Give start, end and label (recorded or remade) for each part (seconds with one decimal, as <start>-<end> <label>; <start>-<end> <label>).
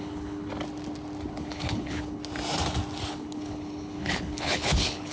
0.0-0.5 remade; 0.5-1.3 recorded; 1.3-2.2 remade; 2.2-3.1 recorded; 3.1-5.1 remade